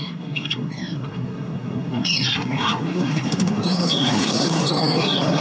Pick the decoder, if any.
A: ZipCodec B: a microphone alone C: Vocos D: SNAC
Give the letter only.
D